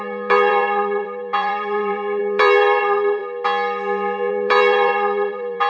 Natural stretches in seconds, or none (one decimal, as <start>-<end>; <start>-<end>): 3.2-4.3